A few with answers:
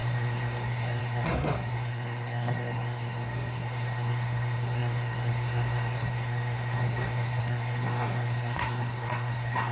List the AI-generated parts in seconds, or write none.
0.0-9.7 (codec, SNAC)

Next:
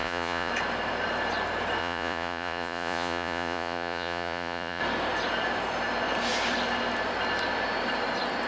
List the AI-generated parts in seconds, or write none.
0.0-0.5 (vocoder, Vocos); 1.8-4.8

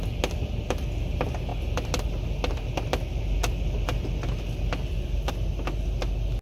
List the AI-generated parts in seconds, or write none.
none

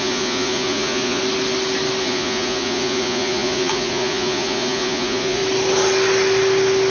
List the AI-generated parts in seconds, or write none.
0.0-1.2 (vocoder, Vocos); 2.0-5.4

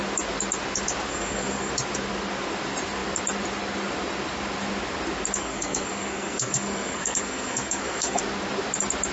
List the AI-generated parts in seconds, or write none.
1.1-1.7 (codec, SNAC); 5.4-8.2

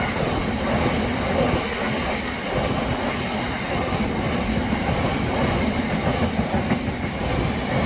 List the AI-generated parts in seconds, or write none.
none